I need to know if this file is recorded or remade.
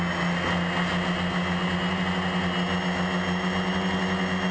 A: recorded